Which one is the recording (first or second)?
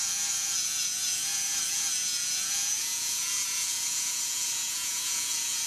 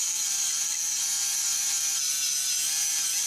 second